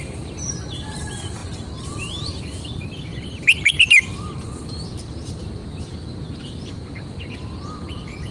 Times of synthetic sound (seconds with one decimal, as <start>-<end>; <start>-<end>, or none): 0.0-5.6; 6.4-8.3